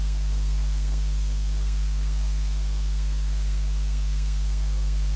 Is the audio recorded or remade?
remade